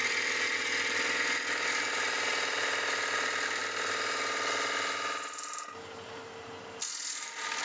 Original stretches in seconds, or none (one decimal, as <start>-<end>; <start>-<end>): 0.0-7.6